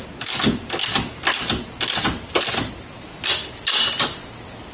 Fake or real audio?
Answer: real